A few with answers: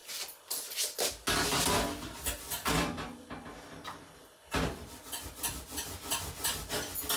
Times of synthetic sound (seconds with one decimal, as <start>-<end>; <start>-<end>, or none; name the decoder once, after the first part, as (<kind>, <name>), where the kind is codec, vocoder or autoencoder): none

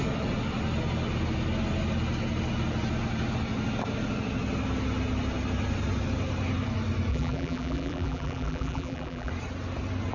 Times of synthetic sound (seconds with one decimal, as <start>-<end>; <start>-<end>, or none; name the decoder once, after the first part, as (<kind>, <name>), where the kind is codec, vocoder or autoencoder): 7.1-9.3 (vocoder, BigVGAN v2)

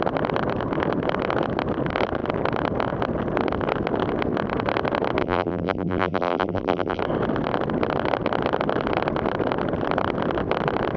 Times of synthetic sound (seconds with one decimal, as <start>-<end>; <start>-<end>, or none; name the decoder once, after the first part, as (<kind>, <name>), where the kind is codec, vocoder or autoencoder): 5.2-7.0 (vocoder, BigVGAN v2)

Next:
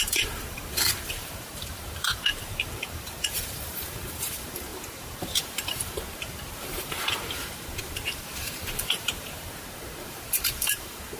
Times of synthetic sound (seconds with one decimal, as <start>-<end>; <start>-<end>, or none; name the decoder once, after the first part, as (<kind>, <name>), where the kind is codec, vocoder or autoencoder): 0.0-11.2 (vocoder, BigVGAN v2)

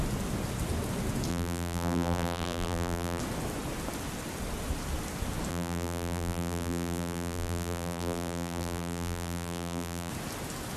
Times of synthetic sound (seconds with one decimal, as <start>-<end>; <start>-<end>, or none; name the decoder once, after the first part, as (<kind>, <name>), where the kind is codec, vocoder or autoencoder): 1.3-3.2 (vocoder, BigVGAN v2); 5.5-10.1

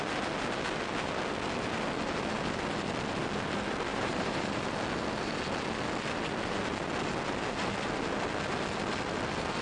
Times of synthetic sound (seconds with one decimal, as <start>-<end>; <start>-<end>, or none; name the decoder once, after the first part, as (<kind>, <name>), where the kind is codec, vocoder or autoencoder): 3.9-4.6 (vocoder, BigVGAN v2)

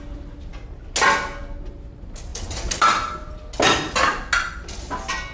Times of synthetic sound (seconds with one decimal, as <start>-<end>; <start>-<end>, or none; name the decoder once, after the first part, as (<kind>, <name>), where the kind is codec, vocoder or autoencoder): 2.3-3.3 (vocoder, BigVGAN v2)

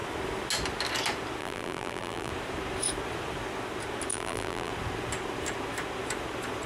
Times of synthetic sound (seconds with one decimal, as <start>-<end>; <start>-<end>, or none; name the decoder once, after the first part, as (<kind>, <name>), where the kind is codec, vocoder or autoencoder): 1.4-2.3 (vocoder, BigVGAN v2); 4.1-4.7